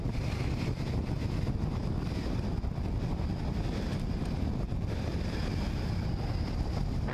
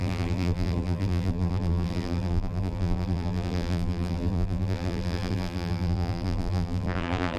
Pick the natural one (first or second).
first